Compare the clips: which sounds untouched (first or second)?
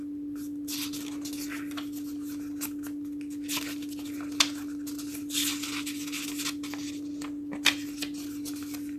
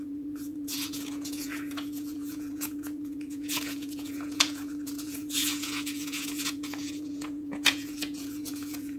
first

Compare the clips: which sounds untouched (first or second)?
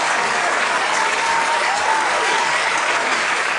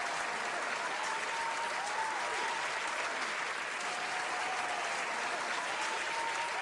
second